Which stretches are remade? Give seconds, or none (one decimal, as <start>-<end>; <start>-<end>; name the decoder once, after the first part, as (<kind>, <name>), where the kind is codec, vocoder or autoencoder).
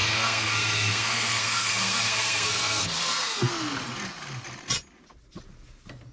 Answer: 0.0-3.5 (codec, SNAC)